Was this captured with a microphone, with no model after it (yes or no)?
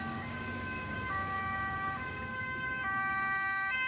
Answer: no